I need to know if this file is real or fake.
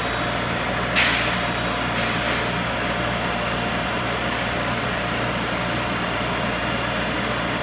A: real